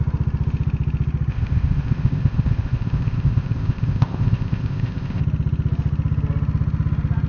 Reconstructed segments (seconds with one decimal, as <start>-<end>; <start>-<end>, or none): 1.3-5.2